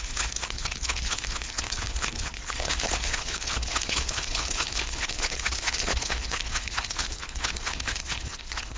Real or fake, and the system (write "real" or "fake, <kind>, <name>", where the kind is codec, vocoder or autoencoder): fake, codec, HILCodec